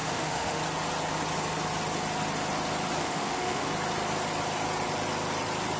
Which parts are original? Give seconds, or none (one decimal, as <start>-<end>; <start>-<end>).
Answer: 0.6-3.0; 3.7-5.8

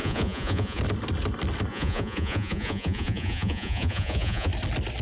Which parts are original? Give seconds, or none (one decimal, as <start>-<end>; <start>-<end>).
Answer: 0.8-1.7; 4.5-5.0

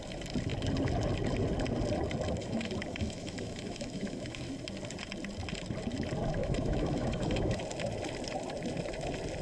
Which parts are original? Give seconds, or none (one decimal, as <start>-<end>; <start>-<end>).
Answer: 0.0-2.4; 4.5-6.4; 7.6-9.4

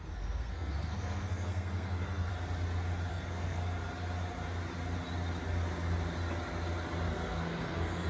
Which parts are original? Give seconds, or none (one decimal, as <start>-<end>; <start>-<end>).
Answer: 2.3-3.1; 3.6-7.1

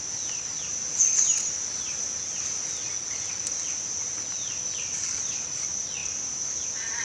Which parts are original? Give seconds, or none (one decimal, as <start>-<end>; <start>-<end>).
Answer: 0.0-7.0

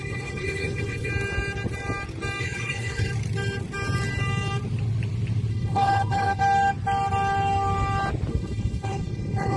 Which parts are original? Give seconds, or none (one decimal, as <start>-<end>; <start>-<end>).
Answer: 1.1-2.4; 3.1-5.5; 6.4-8.3